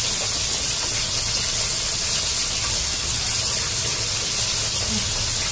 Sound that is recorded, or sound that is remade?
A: recorded